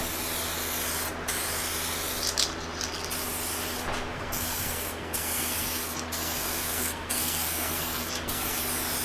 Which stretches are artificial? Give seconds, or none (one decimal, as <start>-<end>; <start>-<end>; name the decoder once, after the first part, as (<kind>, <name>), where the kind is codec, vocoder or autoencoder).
4.1-8.6 (codec, SNAC)